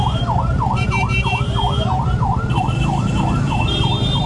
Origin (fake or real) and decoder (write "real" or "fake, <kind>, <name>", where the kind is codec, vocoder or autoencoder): fake, vocoder, BigVGAN v2